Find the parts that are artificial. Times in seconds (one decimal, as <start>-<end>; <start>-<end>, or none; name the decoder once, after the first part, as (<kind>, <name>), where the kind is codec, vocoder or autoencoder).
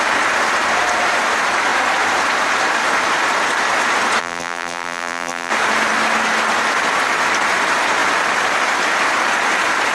4.2-5.5 (vocoder, BigVGAN v2)